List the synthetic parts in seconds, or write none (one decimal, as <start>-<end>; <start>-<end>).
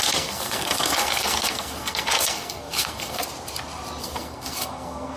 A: 0.0-3.2; 4.0-5.2